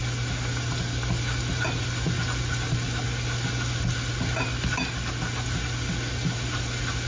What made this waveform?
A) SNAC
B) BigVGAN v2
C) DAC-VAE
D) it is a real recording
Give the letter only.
D